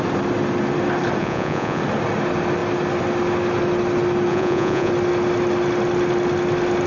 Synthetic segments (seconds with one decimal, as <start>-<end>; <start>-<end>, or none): 1.2-1.8; 4.3-4.9